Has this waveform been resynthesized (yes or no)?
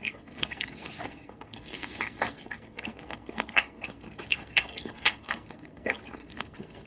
yes